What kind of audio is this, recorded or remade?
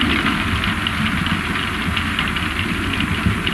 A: recorded